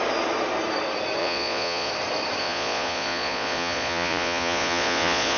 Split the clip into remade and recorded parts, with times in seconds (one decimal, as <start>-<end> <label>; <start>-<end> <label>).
0.0-1.2 recorded; 1.2-1.9 remade; 1.9-2.4 recorded; 2.4-5.4 remade